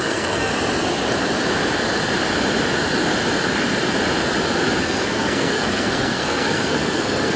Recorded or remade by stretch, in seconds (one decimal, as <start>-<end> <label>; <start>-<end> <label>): 0.0-0.5 remade; 0.5-4.8 recorded; 4.8-7.4 remade